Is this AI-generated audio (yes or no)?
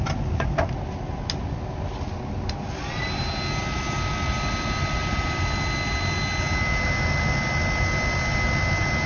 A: no